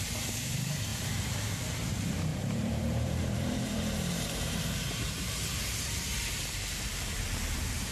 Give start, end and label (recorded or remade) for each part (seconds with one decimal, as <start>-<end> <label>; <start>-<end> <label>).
0.0-0.9 remade; 0.9-1.9 recorded; 1.9-7.9 remade